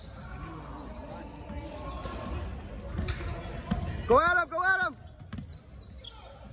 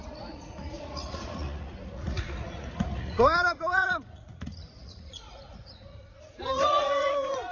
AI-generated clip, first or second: second